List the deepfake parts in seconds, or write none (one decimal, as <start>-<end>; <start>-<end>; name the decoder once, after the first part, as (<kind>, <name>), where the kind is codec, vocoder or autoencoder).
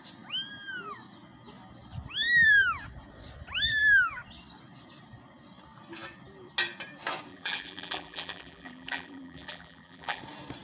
7.3-10.2 (vocoder, BigVGAN v2)